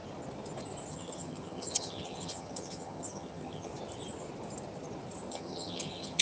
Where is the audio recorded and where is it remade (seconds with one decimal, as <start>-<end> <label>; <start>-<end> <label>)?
0.0-0.9 recorded; 0.9-3.7 remade; 3.7-5.3 recorded; 5.3-6.2 remade